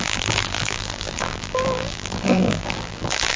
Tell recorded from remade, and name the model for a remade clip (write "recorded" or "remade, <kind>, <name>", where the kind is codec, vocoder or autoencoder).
remade, vocoder, BigVGAN v2